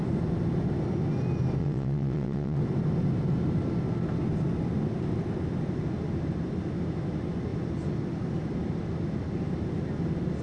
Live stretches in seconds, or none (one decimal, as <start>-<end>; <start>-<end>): 0.0-1.6; 2.6-10.4